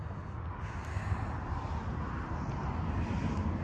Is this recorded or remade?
recorded